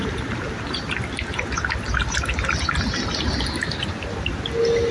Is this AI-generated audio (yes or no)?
no